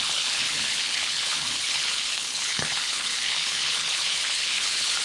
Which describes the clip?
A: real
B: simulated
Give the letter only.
B